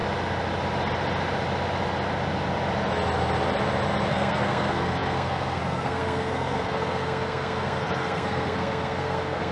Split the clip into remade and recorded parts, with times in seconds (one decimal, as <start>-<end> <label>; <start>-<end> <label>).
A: 0.0-4.1 recorded; 4.1-9.5 remade